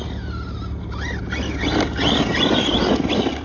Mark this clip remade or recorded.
recorded